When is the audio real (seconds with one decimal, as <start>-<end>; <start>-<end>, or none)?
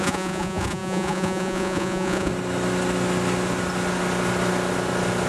2.3-5.3